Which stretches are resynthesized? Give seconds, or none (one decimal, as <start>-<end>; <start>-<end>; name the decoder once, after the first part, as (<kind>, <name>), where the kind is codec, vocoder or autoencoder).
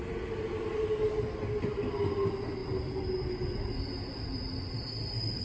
none